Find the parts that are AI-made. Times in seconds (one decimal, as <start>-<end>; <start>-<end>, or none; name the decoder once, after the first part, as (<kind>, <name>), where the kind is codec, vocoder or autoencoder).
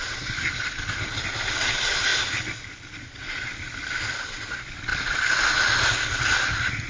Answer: none